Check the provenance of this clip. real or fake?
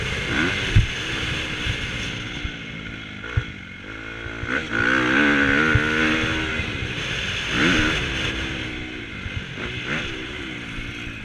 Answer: real